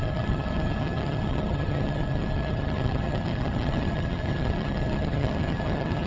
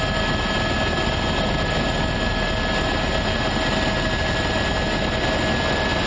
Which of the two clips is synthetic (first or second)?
first